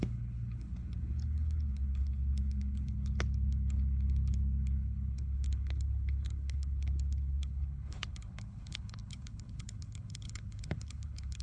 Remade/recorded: remade